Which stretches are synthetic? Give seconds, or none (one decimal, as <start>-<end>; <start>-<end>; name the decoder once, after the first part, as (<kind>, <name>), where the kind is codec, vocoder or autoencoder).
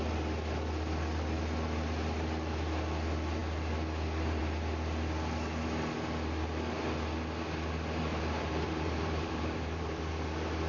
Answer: 8.1-10.0 (vocoder, BigVGAN v2)